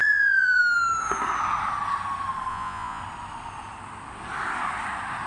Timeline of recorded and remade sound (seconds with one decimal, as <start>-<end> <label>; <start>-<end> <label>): 0.0-0.6 remade; 0.6-2.5 recorded; 2.5-3.0 remade; 3.0-5.3 recorded